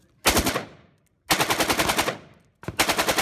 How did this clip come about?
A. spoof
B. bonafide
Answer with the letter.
B